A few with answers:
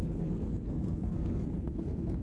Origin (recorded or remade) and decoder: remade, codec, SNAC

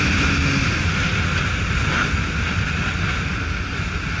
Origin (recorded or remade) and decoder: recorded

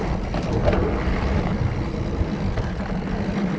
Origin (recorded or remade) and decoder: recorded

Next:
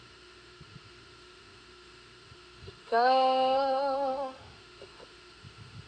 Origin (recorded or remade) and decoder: remade, autoencoder, DAC-VAE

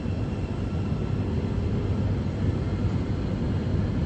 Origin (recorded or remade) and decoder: recorded